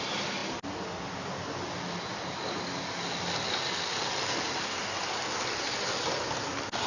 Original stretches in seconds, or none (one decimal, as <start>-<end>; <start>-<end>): 0.0-6.9